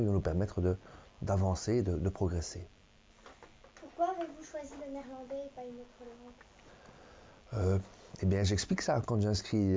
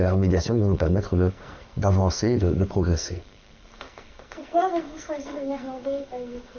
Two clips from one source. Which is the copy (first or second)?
second